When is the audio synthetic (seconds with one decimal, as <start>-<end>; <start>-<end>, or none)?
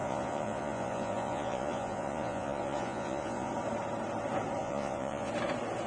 0.0-3.5; 4.6-5.3